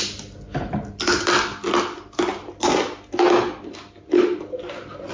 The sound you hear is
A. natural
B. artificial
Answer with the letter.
A